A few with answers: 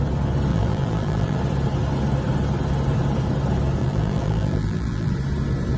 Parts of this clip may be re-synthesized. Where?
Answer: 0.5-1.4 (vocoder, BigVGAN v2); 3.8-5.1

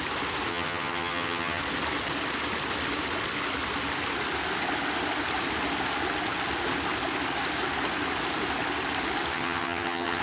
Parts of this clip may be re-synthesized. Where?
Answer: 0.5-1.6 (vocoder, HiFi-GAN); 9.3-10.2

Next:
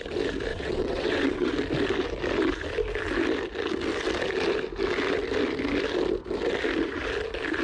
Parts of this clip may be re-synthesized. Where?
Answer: 0.5-1.5 (vocoder, WaveNeXt)

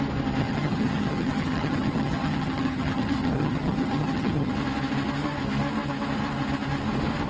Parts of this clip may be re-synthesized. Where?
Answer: 0.4-4.5 (vocoder, HiFi-GAN)

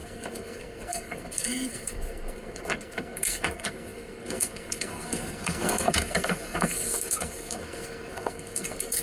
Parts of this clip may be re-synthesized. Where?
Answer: 0.0-9.0 (codec, SNAC)

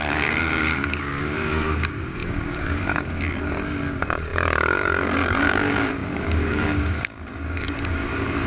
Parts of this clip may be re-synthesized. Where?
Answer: 0.0-8.5 (codec, DAC)